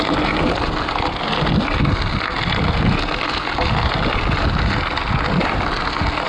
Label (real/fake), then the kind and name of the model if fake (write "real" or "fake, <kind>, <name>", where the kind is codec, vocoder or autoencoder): real